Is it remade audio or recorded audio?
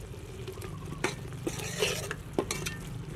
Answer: recorded